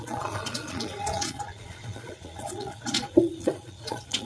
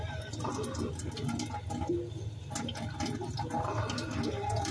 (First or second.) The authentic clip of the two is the second